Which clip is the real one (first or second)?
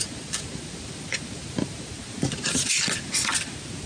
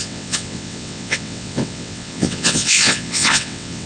first